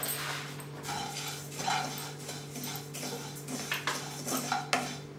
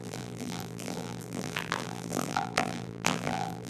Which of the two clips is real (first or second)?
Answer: first